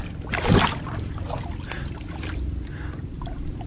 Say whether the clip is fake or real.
real